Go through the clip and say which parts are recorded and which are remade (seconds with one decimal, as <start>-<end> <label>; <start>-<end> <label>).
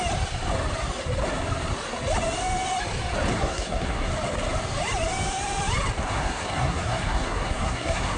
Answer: 0.0-3.3 recorded; 3.3-4.1 remade; 4.1-6.0 recorded; 6.0-8.2 remade